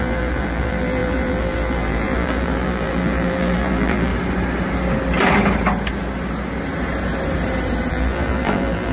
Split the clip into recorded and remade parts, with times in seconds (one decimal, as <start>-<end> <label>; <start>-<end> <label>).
0.0-4.1 remade; 4.1-7.9 recorded; 7.9-8.9 remade